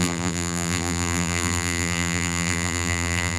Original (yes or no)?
no